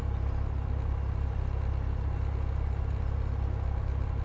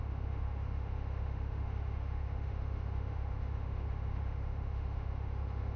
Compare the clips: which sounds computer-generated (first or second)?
second